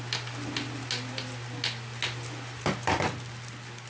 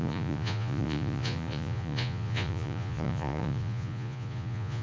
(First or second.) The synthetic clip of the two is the second